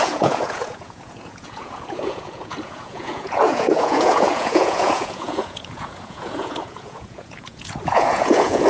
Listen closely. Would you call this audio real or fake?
fake